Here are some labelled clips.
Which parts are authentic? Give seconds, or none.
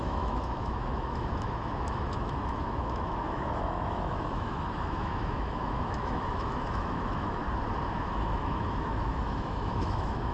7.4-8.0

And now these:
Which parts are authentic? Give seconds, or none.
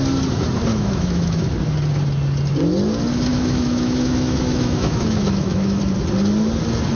0.0-0.7; 1.5-3.3; 5.8-6.9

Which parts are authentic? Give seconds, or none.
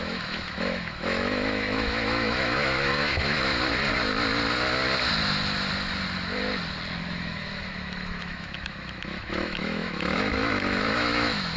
3.5-7.0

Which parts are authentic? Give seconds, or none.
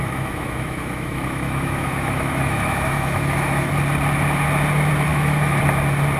3.7-5.1; 5.6-6.2